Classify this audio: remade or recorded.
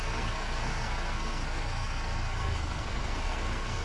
remade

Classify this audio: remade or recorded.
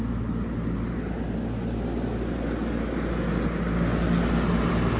recorded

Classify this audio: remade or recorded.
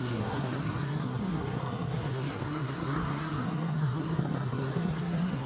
remade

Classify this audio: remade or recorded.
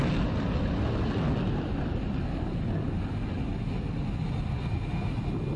recorded